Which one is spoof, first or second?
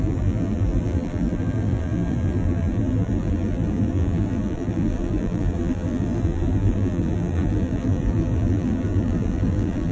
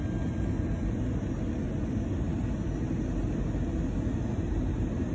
first